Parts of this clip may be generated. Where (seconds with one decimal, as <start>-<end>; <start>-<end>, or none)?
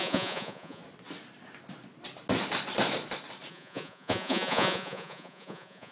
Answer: 0.0-0.8; 3.5-5.9